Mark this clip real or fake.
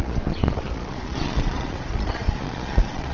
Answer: fake